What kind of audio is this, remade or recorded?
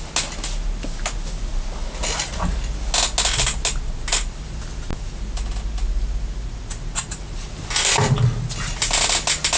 recorded